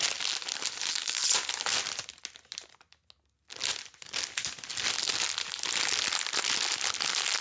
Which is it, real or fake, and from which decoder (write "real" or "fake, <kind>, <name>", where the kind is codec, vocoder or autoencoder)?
real